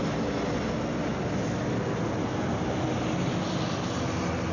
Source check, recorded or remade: recorded